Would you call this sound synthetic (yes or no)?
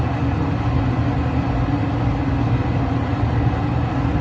no